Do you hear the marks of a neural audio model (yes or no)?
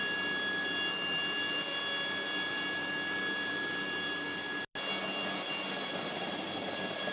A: no